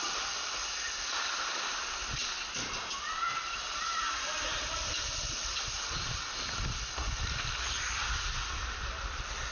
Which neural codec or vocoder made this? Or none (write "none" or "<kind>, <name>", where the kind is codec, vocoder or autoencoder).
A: vocoder, BigVGAN v2